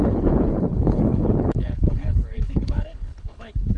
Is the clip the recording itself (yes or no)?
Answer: no